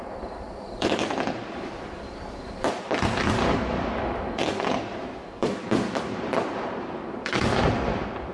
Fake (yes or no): yes